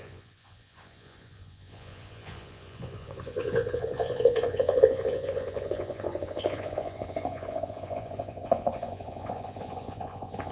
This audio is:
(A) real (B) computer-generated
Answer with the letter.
B